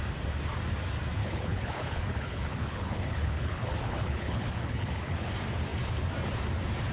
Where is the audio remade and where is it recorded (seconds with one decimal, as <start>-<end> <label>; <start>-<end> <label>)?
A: 0.0-1.2 recorded; 1.2-5.3 remade; 5.3-6.9 recorded

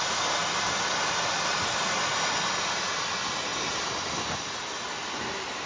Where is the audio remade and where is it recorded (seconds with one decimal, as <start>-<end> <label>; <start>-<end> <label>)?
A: 0.0-5.7 recorded

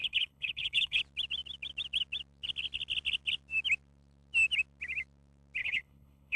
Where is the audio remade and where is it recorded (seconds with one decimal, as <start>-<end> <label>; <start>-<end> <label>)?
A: 0.0-1.0 remade; 1.0-5.6 recorded; 5.6-6.4 remade